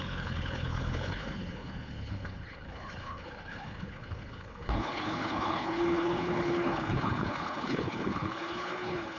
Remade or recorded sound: remade